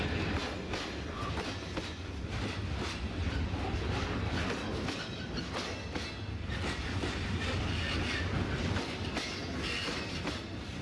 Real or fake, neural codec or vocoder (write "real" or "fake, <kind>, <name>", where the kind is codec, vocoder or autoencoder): real